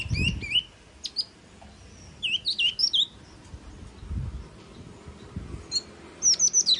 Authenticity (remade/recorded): recorded